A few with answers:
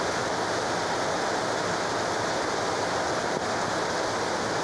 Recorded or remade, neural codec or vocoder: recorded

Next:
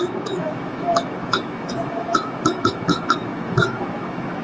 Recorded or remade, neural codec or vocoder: remade, autoencoder, DAC-VAE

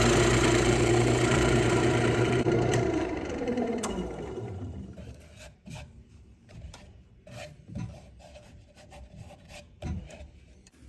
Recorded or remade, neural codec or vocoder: remade, vocoder, BigVGAN v2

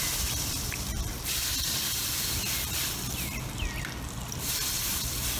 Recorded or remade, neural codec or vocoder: remade, vocoder, BigVGAN v2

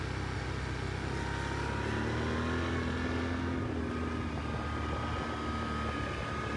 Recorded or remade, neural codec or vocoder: recorded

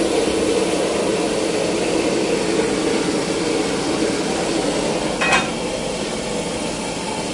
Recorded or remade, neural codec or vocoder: recorded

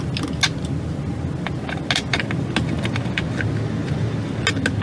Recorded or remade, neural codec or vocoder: recorded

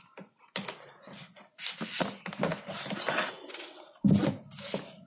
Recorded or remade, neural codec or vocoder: recorded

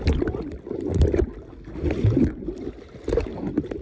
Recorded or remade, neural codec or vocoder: recorded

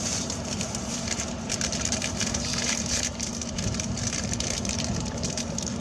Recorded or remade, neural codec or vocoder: remade, vocoder, BigVGAN v2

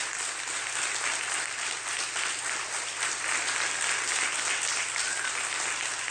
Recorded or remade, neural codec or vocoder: recorded